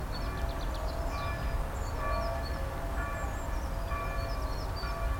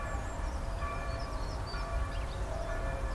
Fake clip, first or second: second